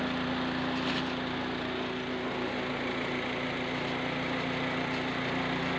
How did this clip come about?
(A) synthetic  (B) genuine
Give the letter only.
B